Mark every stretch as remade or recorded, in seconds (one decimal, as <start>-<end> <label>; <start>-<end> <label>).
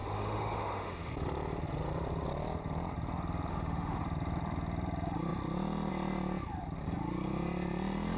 0.0-1.1 remade; 1.1-3.5 recorded; 3.5-4.0 remade; 4.0-8.2 recorded